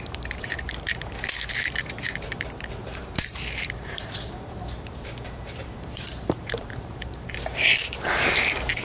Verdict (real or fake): fake